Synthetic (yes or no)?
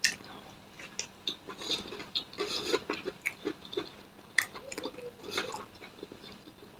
no